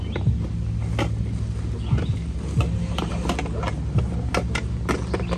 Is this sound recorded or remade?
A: recorded